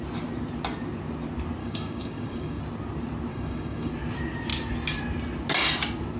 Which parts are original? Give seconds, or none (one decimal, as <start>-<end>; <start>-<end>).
0.0-1.6; 2.6-3.3; 3.9-6.2